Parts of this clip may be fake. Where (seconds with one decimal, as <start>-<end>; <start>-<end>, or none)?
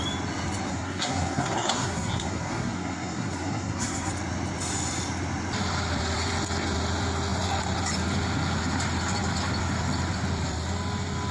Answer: 0.7-4.1